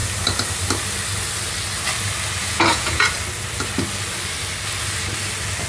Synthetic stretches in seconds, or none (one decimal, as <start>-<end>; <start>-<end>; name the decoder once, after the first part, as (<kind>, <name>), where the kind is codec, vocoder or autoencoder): 2.4-3.1 (vocoder, Vocos)